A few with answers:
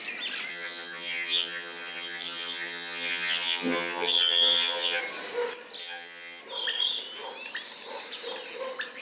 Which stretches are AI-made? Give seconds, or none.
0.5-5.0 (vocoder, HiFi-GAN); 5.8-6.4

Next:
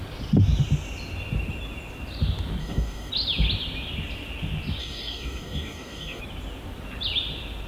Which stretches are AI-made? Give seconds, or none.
2.6-3.1 (codec, DAC); 4.8-6.2

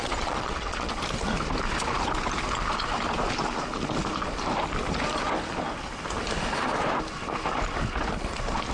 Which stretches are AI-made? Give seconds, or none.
0.0-0.9 (vocoder, Vocos)